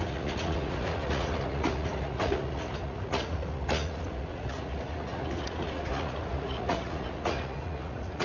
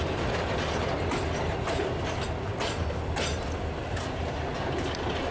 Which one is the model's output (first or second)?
first